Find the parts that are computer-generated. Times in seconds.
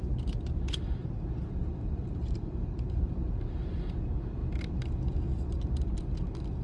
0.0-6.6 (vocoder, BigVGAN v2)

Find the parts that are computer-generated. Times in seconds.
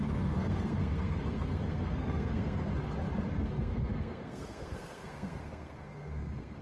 0.0-2.7 (codec, SNAC); 3.3-6.6